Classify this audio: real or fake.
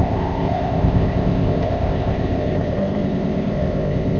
fake